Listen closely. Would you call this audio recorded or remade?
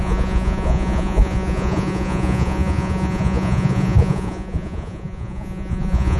remade